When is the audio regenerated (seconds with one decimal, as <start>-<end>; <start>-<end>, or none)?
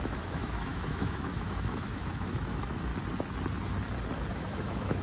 0.0-2.9; 4.3-5.0